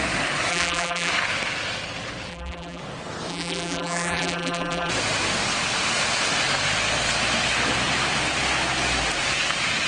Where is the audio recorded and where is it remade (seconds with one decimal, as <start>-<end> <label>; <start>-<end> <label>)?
0.0-0.5 recorded; 0.5-1.1 remade; 1.1-2.3 recorded; 2.3-2.8 remade; 2.8-3.3 recorded; 3.3-4.9 remade; 4.9-9.9 recorded